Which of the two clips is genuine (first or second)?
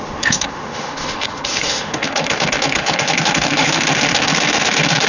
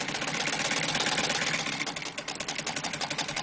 second